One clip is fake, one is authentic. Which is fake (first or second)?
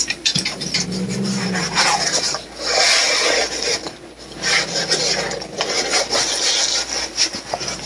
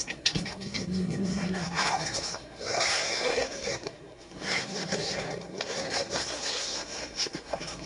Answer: second